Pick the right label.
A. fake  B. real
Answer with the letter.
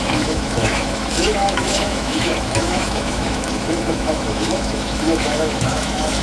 A